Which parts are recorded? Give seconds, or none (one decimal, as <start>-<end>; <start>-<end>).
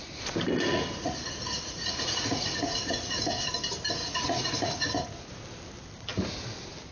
0.0-0.7; 3.5-4.0; 5.4-6.9